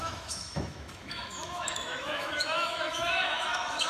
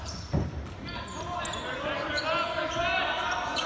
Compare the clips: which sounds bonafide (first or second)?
second